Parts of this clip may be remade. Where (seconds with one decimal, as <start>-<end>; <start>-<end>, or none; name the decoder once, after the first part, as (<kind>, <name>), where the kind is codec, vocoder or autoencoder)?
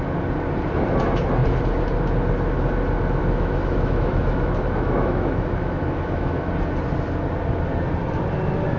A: 3.2-6.5 (autoencoder, DAC-VAE)